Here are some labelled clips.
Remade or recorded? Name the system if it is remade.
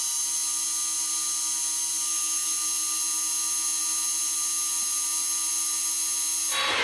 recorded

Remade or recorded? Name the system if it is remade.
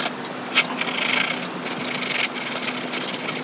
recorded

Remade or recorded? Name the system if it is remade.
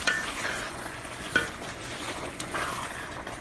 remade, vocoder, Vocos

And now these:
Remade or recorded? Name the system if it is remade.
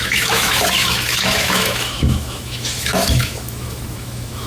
remade, autoencoder, DAC-VAE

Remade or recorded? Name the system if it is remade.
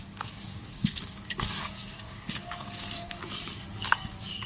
remade, codec, DAC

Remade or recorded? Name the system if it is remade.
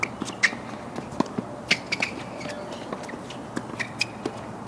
recorded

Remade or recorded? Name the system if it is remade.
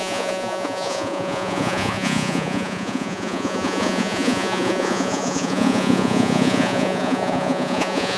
remade, vocoder, Vocos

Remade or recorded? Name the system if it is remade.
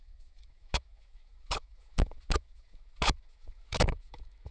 remade, autoencoder, DAC-VAE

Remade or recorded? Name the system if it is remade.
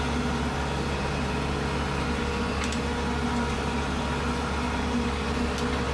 recorded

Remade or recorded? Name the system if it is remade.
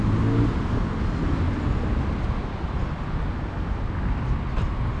recorded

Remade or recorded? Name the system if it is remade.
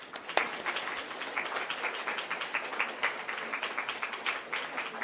recorded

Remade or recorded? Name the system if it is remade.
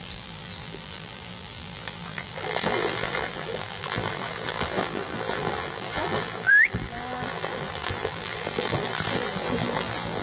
remade, vocoder, BigVGAN v2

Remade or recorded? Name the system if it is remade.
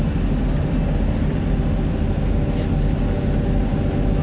recorded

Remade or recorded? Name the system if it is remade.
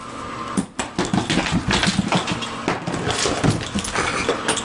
recorded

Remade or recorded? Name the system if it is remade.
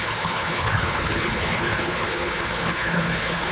remade, codec, HILCodec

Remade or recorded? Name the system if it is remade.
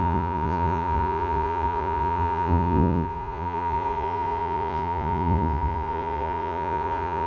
remade, vocoder, Vocos